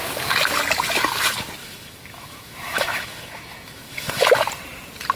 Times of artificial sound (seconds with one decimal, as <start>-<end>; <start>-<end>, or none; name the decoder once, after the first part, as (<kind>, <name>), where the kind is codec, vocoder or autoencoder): 1.6-4.2 (autoencoder, DAC-VAE)